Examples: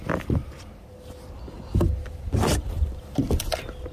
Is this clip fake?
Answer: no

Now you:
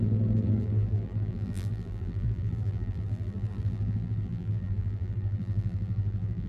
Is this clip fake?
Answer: yes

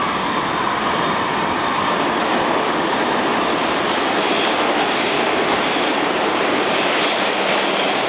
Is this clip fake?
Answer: yes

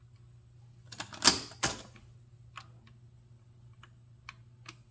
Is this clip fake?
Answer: no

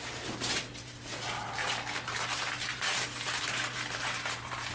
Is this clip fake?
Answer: yes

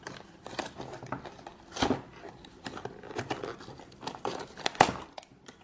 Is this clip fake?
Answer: yes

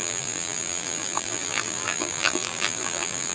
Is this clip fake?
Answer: yes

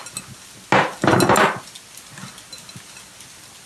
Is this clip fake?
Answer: no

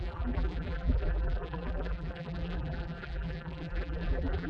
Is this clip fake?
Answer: yes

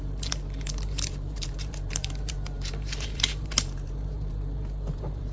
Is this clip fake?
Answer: yes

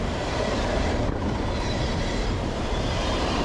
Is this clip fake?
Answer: yes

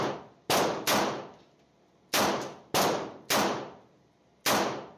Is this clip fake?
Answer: no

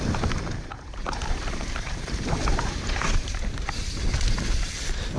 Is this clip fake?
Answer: no